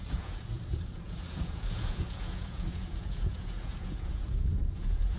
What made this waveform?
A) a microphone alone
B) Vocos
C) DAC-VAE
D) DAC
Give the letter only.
B